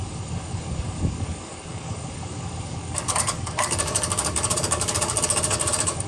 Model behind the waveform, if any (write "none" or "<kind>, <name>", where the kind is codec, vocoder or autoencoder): codec, DAC